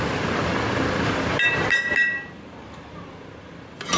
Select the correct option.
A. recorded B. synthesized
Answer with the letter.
A